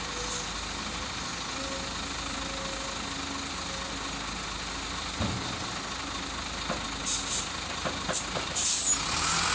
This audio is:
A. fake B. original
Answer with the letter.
B